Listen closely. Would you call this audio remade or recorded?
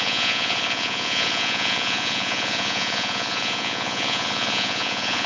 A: remade